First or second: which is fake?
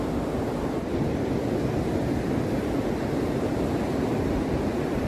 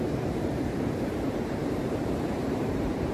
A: second